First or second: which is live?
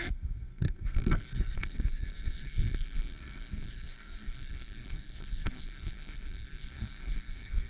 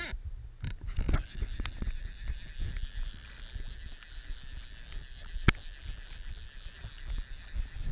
second